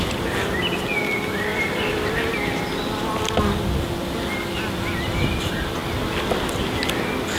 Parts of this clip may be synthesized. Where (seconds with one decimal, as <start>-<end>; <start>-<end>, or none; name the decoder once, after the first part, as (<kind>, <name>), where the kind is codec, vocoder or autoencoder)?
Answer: none